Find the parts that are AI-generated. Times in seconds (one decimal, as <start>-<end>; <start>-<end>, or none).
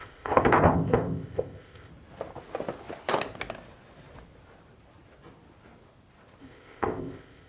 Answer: 0.0-1.9; 6.4-7.5